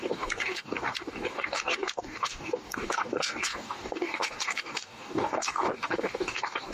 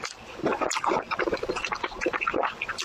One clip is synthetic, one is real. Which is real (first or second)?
second